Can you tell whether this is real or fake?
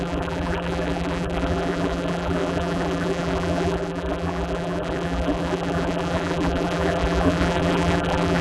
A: fake